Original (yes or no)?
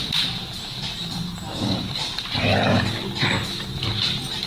no